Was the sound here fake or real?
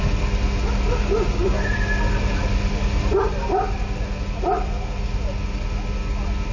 real